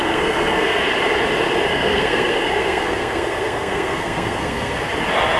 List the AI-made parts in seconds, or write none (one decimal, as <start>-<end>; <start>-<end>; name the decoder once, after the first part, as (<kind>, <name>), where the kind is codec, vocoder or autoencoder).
0.0-0.8 (codec, SNAC); 1.7-4.9